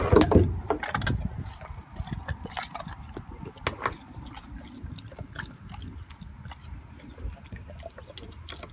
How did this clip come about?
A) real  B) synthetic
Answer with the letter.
A